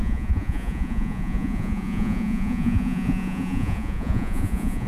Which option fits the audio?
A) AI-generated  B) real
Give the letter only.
A